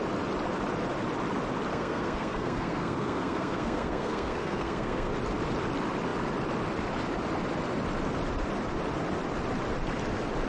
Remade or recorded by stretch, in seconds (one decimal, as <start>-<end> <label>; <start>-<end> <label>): 0.0-1.7 recorded; 1.7-5.1 remade; 5.1-10.5 recorded